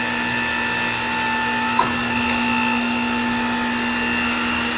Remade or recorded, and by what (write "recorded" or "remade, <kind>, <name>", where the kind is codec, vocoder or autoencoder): recorded